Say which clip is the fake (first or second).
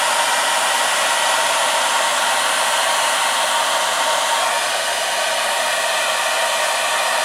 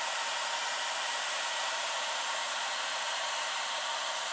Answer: second